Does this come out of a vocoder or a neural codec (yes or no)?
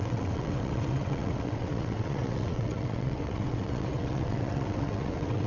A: yes